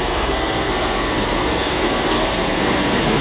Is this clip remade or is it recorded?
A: remade